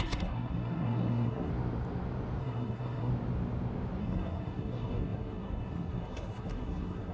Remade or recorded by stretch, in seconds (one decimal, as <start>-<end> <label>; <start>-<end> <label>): 0.0-1.5 remade; 1.5-2.4 recorded; 2.4-3.1 remade; 3.1-4.0 recorded; 4.0-7.1 remade